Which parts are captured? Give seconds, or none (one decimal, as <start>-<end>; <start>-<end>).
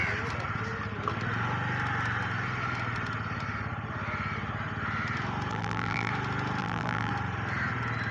0.0-5.5; 6.1-6.6; 7.1-8.1